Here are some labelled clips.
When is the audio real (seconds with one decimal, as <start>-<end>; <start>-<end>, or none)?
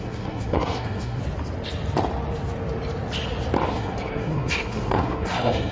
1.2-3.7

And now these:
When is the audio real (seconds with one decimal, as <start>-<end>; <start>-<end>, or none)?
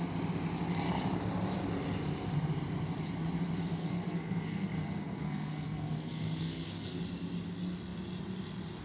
0.0-3.8; 7.0-8.8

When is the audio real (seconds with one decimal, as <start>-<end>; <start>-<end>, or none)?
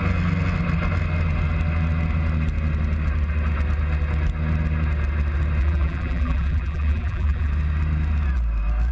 0.0-5.6; 7.5-8.9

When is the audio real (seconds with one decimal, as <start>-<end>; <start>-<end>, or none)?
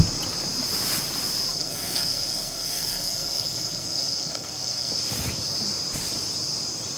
0.0-1.5; 4.9-7.0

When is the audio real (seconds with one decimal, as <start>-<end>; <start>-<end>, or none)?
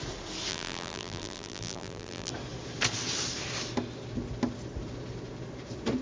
0.0-0.5; 2.3-6.0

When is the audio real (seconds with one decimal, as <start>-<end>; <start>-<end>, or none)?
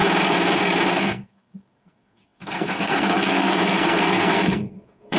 0.0-0.9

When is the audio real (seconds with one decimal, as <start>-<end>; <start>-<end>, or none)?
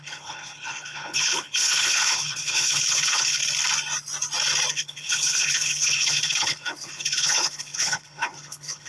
3.4-4.7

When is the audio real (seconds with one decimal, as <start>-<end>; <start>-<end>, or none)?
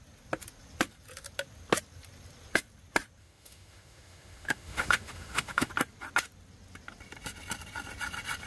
0.0-3.2; 5.7-8.5